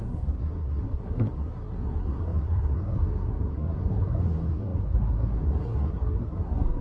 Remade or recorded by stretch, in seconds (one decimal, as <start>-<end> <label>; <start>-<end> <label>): 0.0-6.8 remade